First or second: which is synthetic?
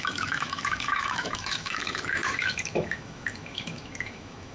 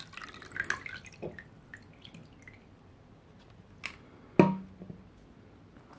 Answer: first